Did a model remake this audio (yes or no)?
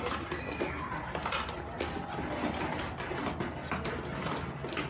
no